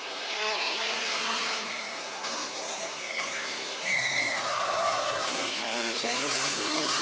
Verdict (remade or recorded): remade